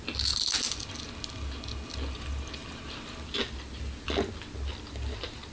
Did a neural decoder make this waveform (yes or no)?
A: no